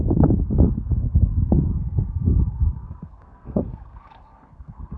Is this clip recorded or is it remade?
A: remade